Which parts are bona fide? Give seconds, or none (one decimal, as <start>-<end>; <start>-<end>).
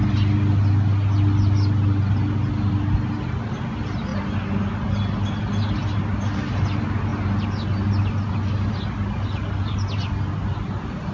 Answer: 0.0-11.1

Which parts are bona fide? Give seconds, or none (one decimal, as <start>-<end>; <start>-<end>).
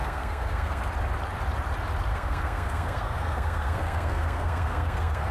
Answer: 0.8-2.1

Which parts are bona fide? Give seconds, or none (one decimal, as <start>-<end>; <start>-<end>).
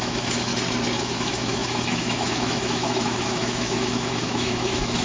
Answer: 0.5-1.0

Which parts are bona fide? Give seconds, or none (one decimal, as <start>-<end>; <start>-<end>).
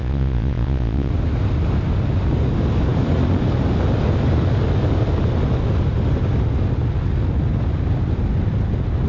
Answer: 1.1-9.1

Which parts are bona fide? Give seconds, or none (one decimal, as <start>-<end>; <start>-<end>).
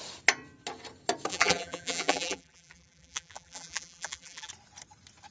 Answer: 0.0-1.3; 4.5-5.3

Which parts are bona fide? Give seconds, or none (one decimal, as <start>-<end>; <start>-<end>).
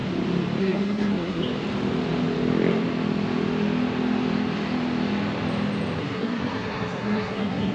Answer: 0.0-0.6; 1.4-6.0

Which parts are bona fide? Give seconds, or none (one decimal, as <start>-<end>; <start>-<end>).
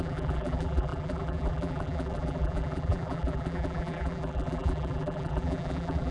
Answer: none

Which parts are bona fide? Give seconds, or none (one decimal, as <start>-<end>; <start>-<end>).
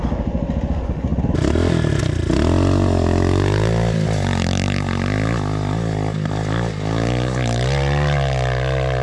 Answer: 0.0-9.0